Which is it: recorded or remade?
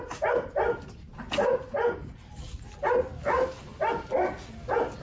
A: recorded